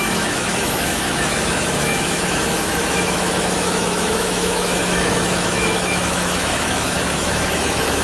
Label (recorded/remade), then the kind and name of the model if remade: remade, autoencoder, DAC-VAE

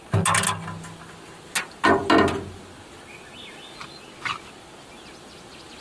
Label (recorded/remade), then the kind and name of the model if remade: recorded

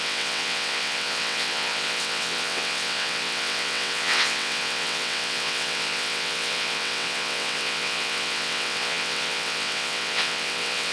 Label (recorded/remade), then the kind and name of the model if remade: remade, vocoder, WaveNeXt